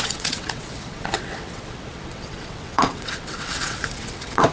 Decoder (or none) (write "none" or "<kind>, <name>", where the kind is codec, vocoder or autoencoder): vocoder, WaveNeXt